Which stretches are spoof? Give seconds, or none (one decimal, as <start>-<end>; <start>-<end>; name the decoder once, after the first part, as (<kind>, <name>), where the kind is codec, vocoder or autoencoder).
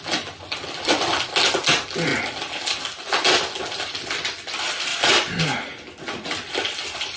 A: 4.9-5.4 (vocoder, Vocos)